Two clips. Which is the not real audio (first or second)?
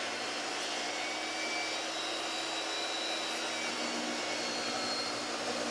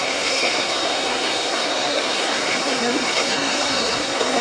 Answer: second